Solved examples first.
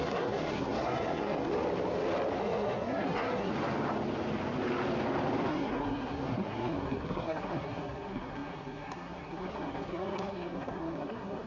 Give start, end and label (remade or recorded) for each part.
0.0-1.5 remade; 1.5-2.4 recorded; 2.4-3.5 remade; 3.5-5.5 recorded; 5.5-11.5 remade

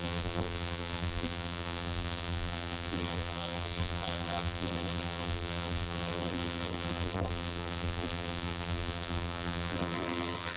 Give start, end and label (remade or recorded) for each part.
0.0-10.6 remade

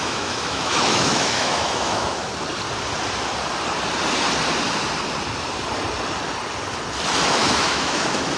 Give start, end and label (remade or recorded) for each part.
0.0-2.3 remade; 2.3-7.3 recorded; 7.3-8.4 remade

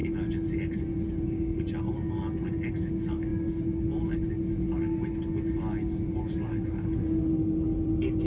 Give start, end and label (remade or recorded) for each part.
0.0-8.3 recorded